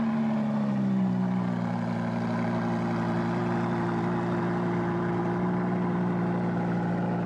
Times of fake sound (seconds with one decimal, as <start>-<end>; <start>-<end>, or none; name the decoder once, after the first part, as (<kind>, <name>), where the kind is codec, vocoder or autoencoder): none